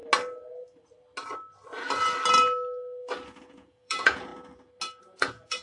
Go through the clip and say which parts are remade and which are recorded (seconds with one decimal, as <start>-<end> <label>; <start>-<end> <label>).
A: 0.0-3.4 recorded; 3.4-4.3 remade; 4.3-5.0 recorded; 5.0-5.6 remade